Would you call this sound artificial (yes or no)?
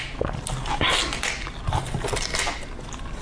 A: no